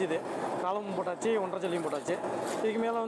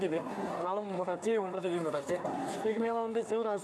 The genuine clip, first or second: first